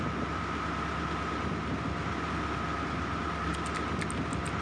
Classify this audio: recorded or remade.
recorded